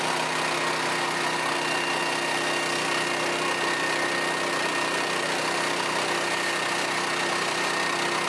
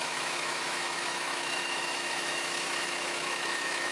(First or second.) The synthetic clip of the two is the second